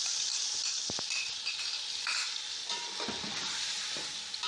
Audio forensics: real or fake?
real